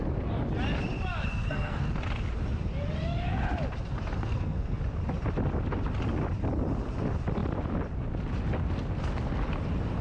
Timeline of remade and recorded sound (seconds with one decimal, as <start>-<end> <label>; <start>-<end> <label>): 0.0-1.3 recorded; 1.3-1.9 remade; 1.9-4.2 recorded; 4.2-4.8 remade; 4.8-10.0 recorded